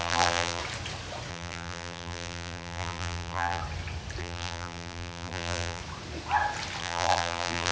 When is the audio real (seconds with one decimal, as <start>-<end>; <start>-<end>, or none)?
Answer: 0.6-1.3; 3.6-4.2; 5.8-6.8